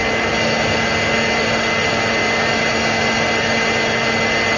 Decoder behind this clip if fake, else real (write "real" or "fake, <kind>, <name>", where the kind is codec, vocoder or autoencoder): real